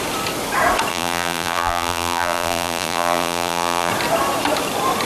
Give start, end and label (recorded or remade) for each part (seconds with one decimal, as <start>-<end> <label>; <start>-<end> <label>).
0.0-0.9 recorded; 0.9-3.9 remade; 3.9-5.0 recorded